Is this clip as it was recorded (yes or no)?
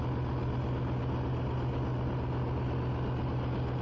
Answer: yes